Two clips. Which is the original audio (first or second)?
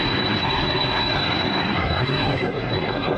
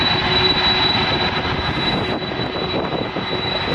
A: second